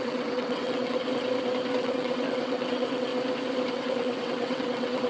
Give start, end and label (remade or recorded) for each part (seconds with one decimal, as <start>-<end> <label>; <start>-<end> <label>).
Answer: 0.0-1.0 remade; 1.0-1.8 recorded; 1.8-3.1 remade; 3.1-3.7 recorded; 3.7-5.1 remade